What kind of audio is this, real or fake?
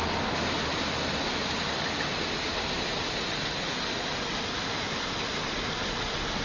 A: real